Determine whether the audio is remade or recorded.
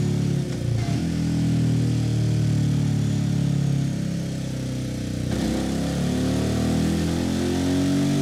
recorded